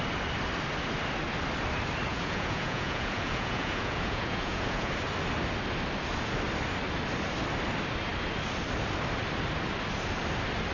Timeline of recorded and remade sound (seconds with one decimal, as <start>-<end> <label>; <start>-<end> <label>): 0.0-2.1 recorded; 2.1-4.9 remade; 4.9-10.7 recorded